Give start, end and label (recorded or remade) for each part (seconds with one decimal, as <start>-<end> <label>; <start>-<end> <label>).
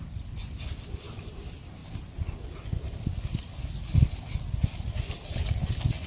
0.0-6.1 recorded